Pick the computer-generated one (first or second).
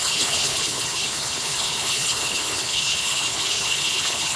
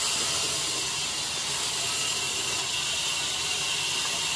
first